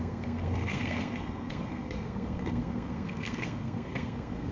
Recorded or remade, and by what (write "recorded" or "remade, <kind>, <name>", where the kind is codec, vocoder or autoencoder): remade, codec, SNAC